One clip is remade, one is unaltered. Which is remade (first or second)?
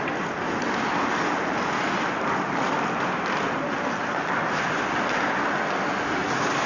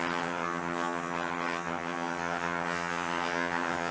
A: second